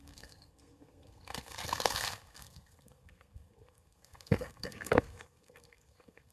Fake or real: fake